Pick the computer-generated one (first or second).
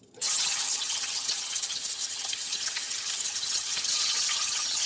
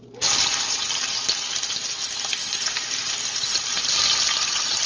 first